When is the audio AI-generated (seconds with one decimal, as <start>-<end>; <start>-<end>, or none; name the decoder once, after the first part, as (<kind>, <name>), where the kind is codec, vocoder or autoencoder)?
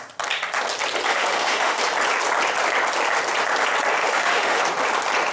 1.1-1.8 (autoencoder, DAC-VAE); 4.0-4.6